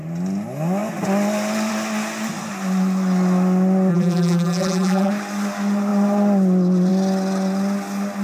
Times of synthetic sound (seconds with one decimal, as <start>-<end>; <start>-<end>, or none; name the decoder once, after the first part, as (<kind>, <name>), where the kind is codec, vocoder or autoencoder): 3.9-5.1 (vocoder, BigVGAN v2)

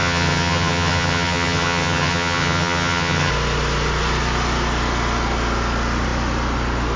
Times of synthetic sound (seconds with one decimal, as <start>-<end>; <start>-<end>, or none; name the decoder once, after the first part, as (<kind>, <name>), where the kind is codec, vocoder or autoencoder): 0.0-3.3 (vocoder, HiFi-GAN)

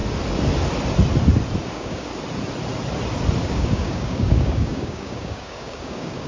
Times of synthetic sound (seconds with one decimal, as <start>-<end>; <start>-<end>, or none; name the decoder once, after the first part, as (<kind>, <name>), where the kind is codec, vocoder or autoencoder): 1.7-2.1 (codec, DAC); 3.4-6.3

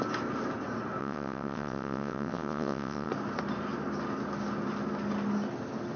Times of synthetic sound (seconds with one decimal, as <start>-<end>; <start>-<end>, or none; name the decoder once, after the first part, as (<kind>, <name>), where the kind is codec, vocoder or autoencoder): 1.0-3.1 (vocoder, WaveNeXt)

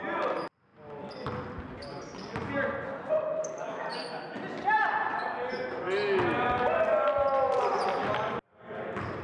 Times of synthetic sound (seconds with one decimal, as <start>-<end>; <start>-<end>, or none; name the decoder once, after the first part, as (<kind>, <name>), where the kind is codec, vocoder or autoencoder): none

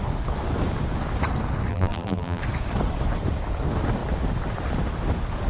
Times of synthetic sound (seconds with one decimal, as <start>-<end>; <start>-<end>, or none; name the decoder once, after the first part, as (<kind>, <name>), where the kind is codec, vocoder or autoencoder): 1.7-2.4 (vocoder, BigVGAN v2)